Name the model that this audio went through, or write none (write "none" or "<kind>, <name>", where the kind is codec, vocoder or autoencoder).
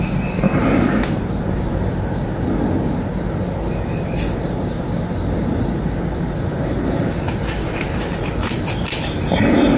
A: none